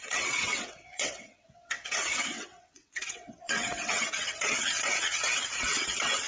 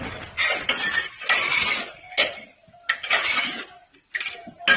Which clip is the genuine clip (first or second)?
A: second